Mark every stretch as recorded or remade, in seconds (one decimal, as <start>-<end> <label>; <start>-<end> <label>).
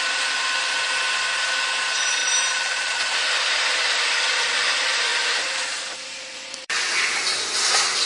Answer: 0.0-2.2 recorded; 2.2-3.0 remade; 3.0-5.1 recorded; 5.1-6.8 remade; 6.8-8.1 recorded